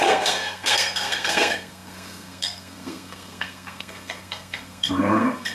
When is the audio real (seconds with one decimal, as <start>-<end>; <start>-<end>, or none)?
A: none